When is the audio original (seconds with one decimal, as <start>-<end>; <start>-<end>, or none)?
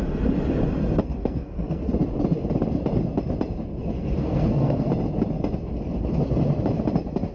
0.0-1.0; 1.8-3.8; 4.9-7.3